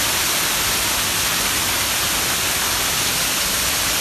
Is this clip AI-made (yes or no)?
no